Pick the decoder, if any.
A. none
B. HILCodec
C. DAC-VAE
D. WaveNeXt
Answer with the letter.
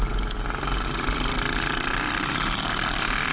A